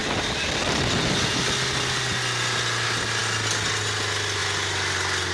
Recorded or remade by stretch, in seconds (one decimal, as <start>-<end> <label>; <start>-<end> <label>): 0.0-5.3 recorded